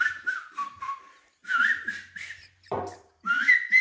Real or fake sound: real